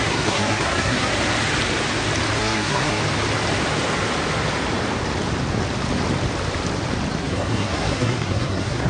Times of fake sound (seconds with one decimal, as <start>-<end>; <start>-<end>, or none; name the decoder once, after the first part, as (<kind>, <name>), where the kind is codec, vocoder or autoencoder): 0.0-1.1 (codec, SNAC); 2.4-3.0; 7.2-8.9